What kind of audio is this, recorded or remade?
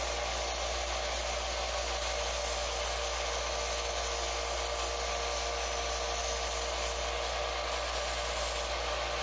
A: recorded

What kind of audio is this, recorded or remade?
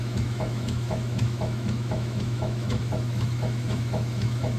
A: remade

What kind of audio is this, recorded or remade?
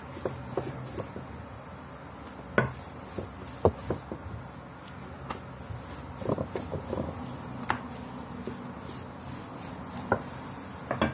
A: recorded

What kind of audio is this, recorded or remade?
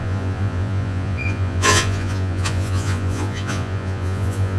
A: remade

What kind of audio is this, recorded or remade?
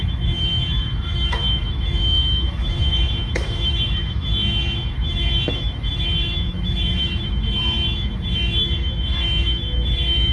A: remade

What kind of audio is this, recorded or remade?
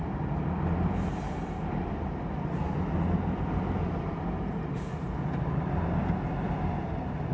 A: recorded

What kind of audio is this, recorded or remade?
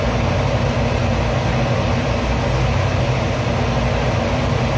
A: recorded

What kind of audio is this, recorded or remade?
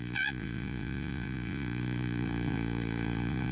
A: remade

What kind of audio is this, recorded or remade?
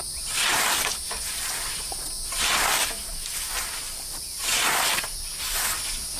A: recorded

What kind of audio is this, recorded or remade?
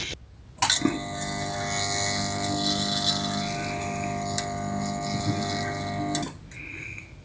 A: recorded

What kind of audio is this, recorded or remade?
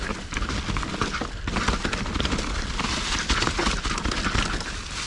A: recorded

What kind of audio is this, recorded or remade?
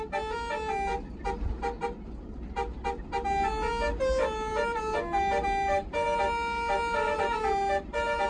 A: recorded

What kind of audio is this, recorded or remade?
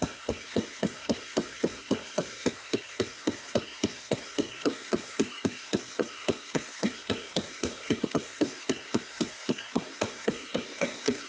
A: remade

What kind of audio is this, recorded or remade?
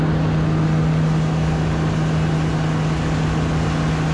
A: recorded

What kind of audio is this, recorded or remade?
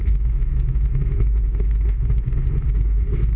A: remade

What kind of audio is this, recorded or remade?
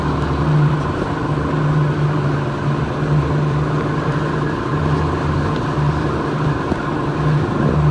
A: recorded